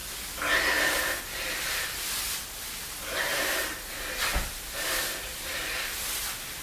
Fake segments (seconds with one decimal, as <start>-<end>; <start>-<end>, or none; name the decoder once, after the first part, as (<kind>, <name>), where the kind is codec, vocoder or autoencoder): 4.3-5.6 (vocoder, BigVGAN v2)